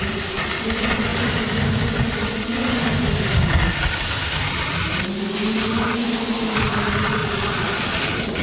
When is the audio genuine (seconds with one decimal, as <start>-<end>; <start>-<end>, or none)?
0.0-7.2; 8.0-8.4